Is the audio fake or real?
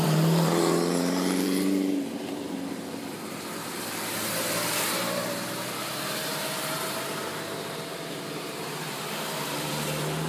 fake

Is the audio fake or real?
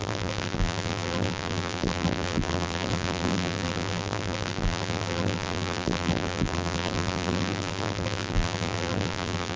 fake